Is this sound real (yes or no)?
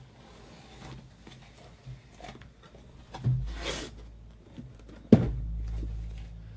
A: yes